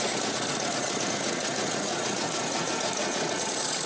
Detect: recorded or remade remade